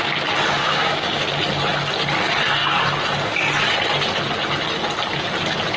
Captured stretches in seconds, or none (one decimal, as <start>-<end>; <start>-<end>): 0.0-0.6; 1.2-5.8